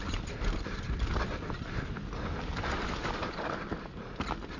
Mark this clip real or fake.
real